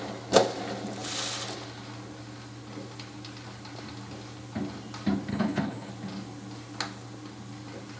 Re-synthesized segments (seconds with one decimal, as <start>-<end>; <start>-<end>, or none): 5.3-5.9